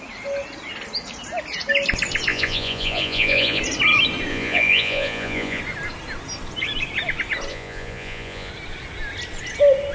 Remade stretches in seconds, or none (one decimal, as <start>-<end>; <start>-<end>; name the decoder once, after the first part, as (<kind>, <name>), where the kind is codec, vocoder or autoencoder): 2.3-3.6 (vocoder, Vocos); 4.3-5.6; 7.5-8.5